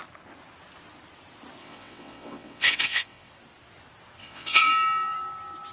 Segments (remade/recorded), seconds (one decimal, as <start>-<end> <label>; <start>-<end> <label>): 0.0-1.6 recorded; 1.6-3.3 remade; 3.3-4.2 recorded; 4.2-4.7 remade; 4.7-5.7 recorded